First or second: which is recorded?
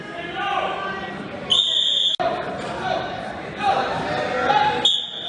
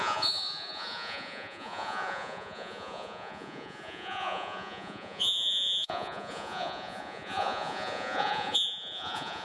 first